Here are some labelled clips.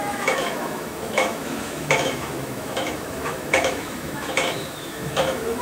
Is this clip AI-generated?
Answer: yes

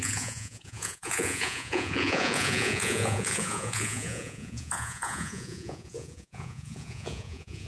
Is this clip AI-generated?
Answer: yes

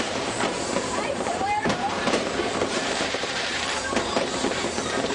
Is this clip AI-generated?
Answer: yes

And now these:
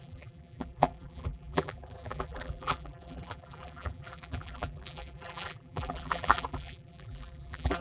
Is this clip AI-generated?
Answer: yes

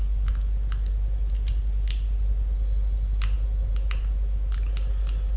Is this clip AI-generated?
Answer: no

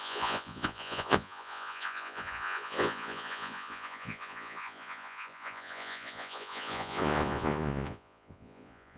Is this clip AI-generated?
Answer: yes